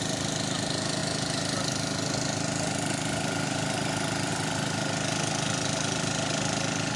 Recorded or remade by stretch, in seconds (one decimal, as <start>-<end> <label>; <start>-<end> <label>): 0.0-7.0 recorded